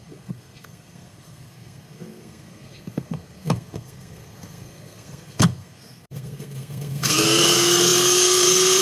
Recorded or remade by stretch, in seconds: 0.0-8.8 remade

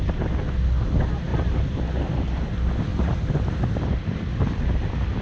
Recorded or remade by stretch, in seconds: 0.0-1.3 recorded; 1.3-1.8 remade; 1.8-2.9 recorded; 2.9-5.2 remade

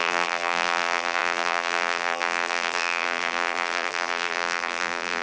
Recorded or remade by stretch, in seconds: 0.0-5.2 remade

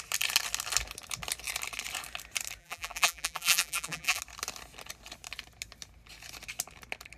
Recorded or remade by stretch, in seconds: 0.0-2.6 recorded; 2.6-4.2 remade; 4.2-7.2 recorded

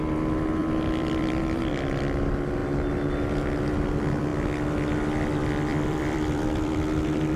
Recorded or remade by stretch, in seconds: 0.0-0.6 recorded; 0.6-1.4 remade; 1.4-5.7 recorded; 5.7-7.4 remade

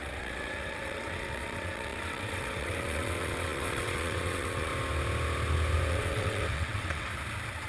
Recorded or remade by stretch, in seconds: 0.0-4.7 remade; 4.7-5.9 recorded; 5.9-7.1 remade; 7.1-7.7 recorded